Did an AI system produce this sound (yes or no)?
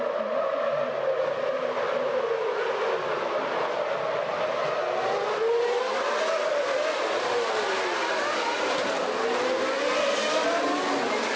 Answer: no